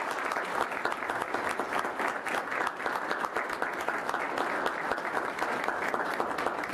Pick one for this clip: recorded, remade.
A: recorded